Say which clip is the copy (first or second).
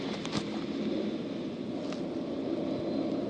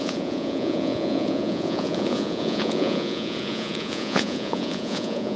second